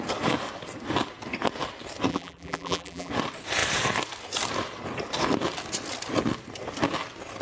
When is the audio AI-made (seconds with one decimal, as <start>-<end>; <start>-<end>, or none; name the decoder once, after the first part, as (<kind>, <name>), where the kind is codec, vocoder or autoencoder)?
2.1-3.1 (vocoder, BigVGAN v2)